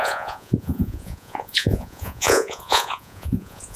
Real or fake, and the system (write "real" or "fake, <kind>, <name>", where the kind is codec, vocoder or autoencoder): fake, vocoder, Vocos